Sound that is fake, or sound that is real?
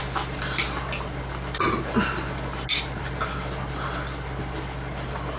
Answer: real